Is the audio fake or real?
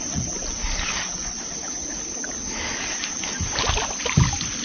real